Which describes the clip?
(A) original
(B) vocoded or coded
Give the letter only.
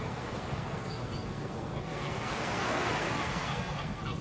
B